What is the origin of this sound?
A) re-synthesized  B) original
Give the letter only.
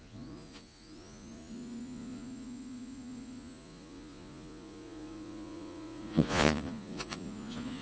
A